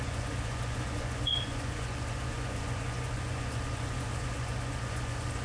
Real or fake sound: fake